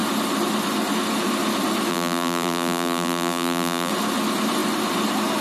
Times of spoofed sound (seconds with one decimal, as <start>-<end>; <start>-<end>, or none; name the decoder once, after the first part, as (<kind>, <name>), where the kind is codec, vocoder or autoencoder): 1.9-3.9 (vocoder, BigVGAN v2)

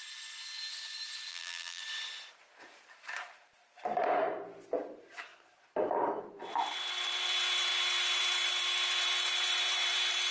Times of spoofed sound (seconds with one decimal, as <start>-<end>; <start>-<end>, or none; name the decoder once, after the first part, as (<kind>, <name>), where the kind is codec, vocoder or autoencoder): 1.3-1.8 (vocoder, BigVGAN v2)

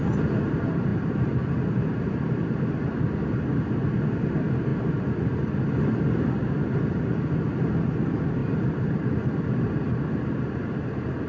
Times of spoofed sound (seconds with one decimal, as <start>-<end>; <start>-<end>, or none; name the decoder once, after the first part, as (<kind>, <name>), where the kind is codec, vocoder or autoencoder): 0.9-3.2 (vocoder, BigVGAN v2); 8.4-11.3

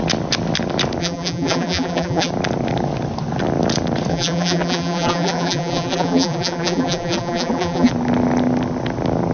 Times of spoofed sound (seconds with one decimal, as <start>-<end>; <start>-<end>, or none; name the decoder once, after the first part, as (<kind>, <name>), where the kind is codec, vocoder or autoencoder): 1.0-2.3 (vocoder, BigVGAN v2); 4.1-7.9

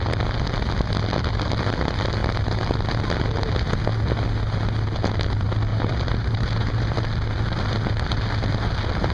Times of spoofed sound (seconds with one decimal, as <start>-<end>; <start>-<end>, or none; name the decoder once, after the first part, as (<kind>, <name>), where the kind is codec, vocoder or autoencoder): 5.7-6.8 (vocoder, BigVGAN v2)

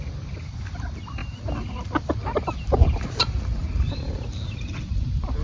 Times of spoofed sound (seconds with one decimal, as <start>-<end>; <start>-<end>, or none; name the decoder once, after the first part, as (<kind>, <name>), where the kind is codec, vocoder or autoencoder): 3.6-4.1 (vocoder, BigVGAN v2)